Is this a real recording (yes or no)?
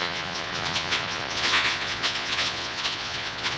no